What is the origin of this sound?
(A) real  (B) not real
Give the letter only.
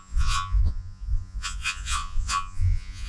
B